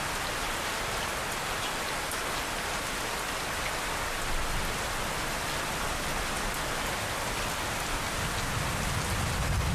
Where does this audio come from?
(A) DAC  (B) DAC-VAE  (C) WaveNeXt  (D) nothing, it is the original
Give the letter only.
D